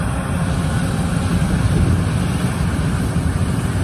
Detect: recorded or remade recorded